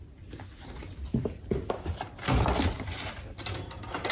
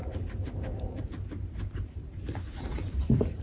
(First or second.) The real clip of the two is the first